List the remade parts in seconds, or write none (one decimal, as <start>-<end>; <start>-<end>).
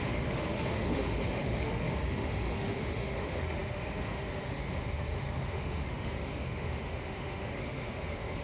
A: 0.0-8.4